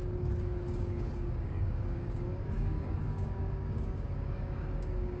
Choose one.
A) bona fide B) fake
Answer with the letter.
B